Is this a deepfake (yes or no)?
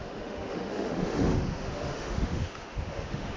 yes